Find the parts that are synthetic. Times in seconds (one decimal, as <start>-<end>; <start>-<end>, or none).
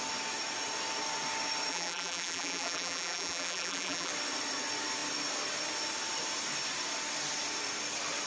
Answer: 1.7-4.1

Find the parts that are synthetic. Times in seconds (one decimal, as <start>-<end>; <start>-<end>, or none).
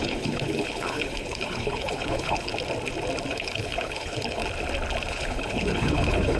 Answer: 0.0-2.5; 3.3-4.4; 5.1-6.4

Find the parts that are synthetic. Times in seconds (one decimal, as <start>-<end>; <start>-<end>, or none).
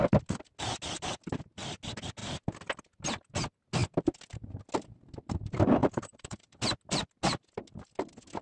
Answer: 5.8-6.6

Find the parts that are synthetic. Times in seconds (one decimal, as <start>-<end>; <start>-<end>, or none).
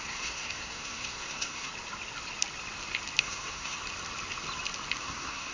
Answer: 0.0-1.7; 3.2-3.8; 5.0-5.5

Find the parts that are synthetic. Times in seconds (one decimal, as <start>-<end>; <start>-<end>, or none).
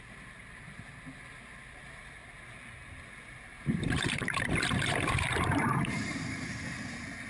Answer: 3.5-6.5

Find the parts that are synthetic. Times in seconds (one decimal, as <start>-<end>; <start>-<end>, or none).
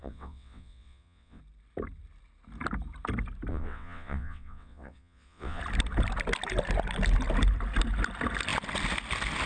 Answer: 0.0-1.4; 3.5-5.6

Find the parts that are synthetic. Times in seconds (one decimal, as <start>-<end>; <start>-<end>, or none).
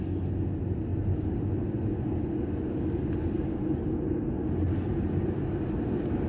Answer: none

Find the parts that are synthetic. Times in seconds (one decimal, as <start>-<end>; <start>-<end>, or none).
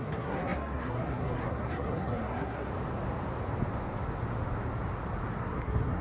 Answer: 0.0-2.7; 5.4-6.0